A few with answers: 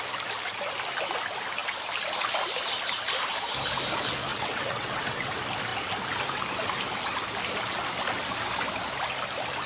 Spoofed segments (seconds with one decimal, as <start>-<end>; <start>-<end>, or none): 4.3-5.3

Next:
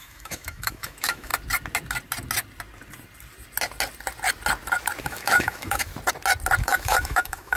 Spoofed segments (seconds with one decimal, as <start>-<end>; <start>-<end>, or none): 0.0-1.3; 5.0-5.9; 6.6-7.6

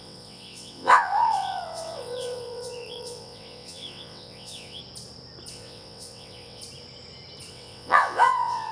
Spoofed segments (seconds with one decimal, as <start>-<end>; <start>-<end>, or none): 0.0-4.8; 5.5-6.6; 7.5-8.7

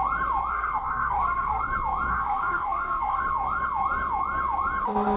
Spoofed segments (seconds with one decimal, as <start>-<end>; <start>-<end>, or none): 0.5-1.6; 2.1-3.2